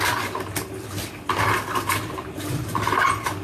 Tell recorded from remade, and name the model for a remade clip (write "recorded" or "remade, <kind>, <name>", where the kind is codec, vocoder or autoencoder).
recorded